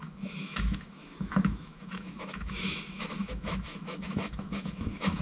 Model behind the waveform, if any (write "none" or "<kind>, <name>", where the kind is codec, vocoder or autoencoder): autoencoder, DAC-VAE